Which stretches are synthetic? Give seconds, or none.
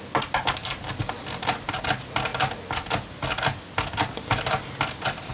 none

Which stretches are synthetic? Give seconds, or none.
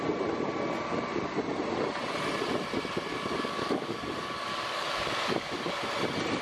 3.1-5.8 (codec, DAC)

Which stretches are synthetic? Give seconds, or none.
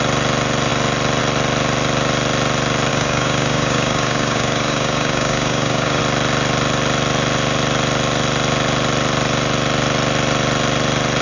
2.9-6.0 (codec, DAC)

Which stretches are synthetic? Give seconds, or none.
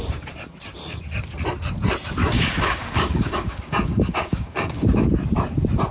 2.2-5.0 (codec, DAC)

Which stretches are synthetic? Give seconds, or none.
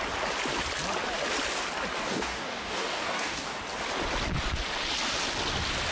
2.0-3.6 (codec, DAC)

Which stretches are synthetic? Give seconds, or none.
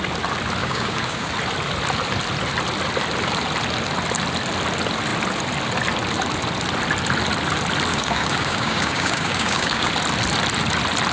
0.6-1.3 (codec, DAC); 7.9-9.9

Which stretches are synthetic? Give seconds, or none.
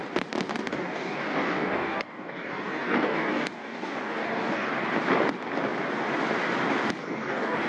0.5-4.7 (codec, DAC); 7.0-7.7